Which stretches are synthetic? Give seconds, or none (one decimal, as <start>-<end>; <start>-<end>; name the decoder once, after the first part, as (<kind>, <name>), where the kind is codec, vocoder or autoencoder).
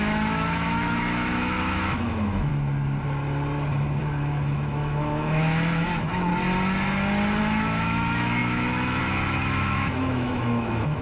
0.0-2.5 (autoencoder, DAC-VAE); 4.0-6.3; 7.4-11.0